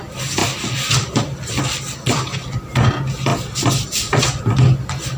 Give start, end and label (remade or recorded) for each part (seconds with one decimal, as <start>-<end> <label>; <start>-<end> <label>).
0.0-5.2 recorded